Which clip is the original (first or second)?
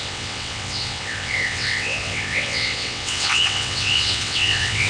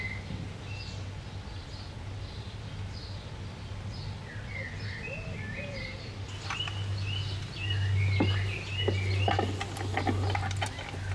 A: second